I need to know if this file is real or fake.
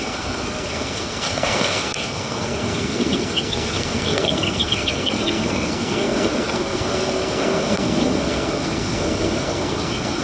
fake